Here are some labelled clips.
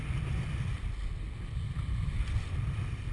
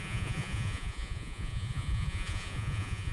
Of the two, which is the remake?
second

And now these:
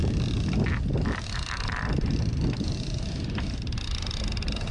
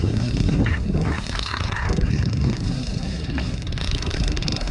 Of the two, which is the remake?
second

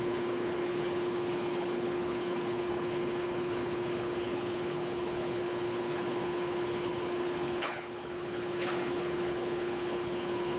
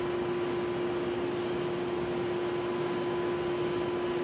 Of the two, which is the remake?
first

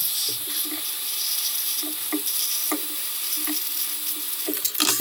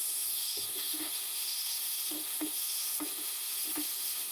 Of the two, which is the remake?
second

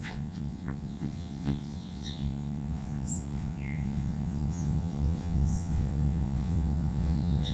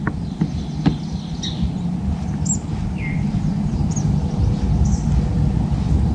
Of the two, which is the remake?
first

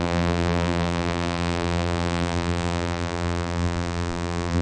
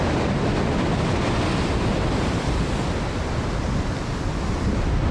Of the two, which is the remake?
first